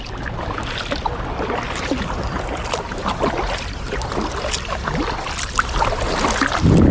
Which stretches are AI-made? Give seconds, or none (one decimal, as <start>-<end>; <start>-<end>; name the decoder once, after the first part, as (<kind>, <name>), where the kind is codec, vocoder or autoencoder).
none